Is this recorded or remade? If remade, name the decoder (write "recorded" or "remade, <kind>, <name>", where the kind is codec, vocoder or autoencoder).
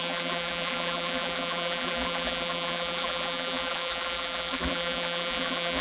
remade, vocoder, BigVGAN v2